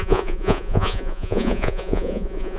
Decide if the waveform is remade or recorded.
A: remade